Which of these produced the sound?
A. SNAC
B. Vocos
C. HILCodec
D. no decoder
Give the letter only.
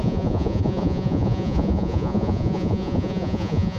B